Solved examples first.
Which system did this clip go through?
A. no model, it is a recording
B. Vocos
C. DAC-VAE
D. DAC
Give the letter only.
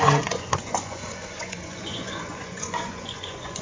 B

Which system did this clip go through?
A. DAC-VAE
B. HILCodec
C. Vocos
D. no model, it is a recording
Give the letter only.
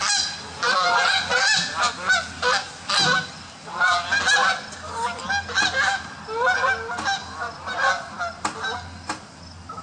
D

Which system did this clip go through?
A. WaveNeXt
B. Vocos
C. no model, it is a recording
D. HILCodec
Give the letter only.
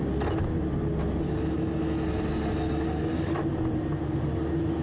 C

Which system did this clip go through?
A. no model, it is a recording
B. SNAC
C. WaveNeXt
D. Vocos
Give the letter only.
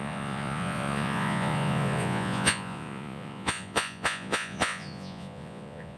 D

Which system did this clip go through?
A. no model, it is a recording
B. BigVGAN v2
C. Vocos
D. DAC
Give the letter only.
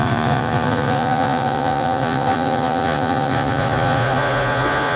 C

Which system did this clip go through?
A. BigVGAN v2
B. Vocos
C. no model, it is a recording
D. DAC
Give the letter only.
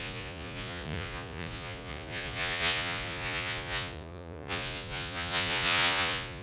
B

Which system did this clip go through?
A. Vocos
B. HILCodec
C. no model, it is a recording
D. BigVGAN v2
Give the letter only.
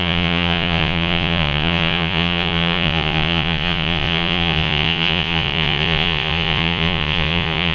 A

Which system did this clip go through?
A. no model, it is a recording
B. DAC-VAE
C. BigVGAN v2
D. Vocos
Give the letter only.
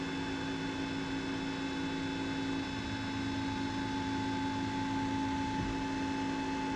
A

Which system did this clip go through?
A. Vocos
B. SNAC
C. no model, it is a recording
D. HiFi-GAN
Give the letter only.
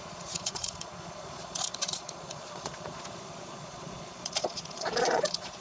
A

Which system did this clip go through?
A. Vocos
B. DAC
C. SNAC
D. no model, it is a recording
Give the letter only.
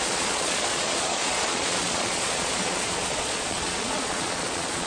A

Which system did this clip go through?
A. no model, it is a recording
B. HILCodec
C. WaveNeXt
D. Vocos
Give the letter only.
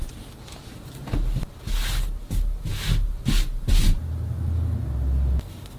A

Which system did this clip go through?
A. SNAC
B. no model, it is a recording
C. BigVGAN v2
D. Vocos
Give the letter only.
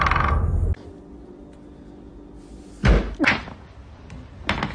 B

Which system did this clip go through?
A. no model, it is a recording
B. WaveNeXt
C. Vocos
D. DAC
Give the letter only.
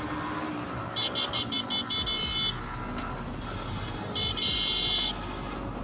A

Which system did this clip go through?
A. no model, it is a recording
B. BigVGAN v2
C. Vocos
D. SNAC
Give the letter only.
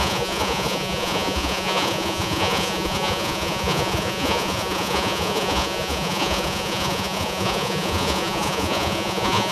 C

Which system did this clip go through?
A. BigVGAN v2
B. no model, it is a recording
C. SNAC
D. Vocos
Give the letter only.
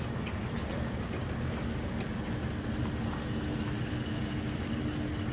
B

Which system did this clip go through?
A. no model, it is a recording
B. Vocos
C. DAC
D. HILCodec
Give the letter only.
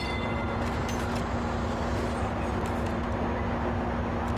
A